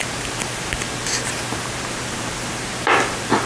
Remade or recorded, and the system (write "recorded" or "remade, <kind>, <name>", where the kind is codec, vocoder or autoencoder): recorded